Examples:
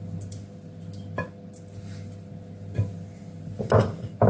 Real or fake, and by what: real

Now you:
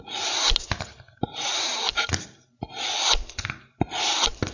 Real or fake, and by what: real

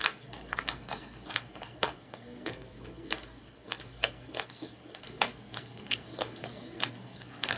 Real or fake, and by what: fake, codec, SNAC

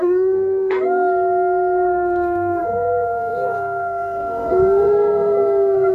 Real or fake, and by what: fake, codec, SNAC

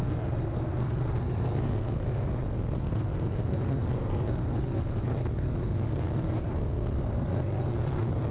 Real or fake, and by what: fake, codec, SNAC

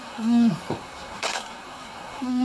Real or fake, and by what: fake, codec, SNAC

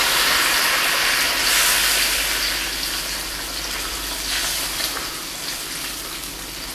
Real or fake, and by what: real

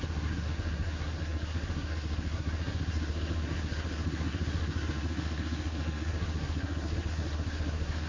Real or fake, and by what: fake, codec, SNAC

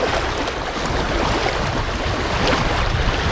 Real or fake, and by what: real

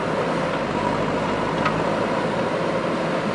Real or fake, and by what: real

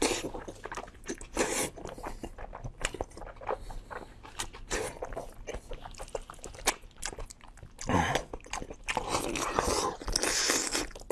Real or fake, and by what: real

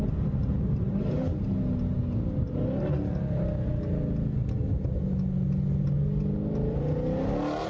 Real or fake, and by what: real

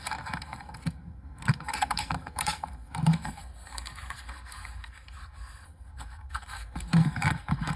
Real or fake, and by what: fake, codec, SNAC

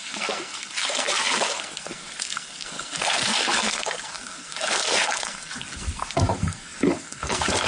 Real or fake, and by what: fake, codec, SNAC